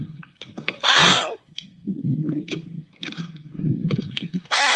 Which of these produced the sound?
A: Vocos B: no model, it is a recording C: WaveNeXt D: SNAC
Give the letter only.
D